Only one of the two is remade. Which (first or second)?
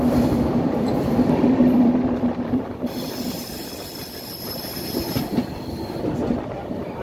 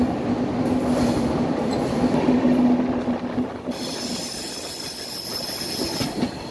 first